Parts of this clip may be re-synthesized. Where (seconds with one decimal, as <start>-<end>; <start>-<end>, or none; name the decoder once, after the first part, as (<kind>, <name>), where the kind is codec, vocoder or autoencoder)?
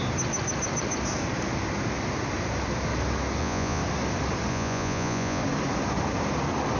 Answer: 3.4-3.8 (vocoder, Vocos); 4.5-5.4